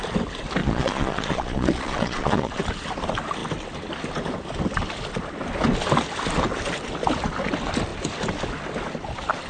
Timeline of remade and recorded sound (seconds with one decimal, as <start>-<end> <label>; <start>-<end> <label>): 0.0-0.6 recorded; 0.6-2.6 remade; 2.6-9.5 recorded